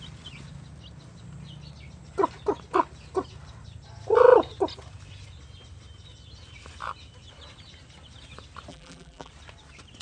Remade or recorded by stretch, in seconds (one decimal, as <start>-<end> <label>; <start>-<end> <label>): 0.0-8.7 recorded; 8.7-9.3 remade; 9.3-10.0 recorded